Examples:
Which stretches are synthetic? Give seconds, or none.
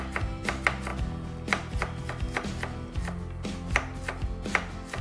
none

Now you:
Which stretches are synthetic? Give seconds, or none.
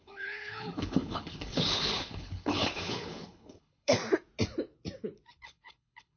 0.0-4.0 (codec, HILCodec); 5.3-6.2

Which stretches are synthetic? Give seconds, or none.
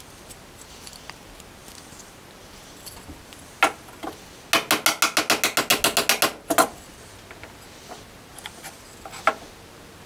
none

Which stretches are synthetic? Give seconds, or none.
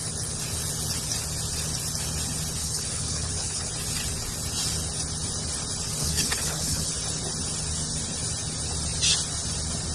2.6-3.7 (codec, HILCodec); 6.0-6.9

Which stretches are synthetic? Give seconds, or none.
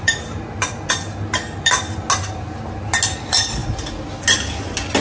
none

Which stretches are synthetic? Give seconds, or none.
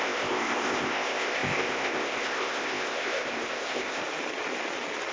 0.0-4.0 (codec, ZipCodec)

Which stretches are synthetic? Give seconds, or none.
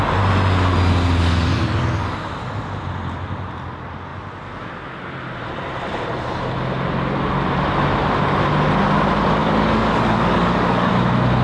9.4-10.9 (codec, DAC)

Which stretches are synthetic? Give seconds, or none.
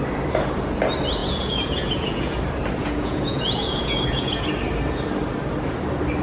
1.2-2.4 (vocoder, Vocos); 2.8-4.5